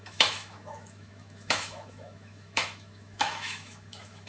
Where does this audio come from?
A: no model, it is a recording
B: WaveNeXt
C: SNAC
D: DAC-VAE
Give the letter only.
D